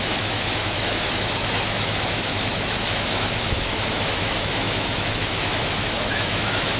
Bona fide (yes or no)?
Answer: no